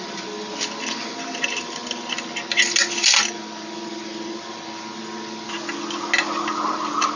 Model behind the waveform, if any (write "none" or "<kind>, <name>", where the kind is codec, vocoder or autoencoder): none